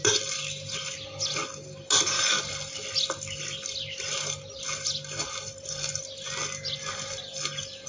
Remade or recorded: recorded